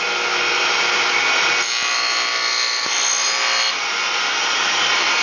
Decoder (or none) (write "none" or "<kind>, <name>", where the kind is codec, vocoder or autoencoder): none